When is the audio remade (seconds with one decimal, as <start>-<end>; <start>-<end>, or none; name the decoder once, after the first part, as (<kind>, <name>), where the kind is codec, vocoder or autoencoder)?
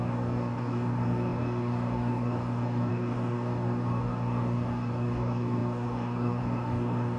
0.0-7.2 (codec, DAC)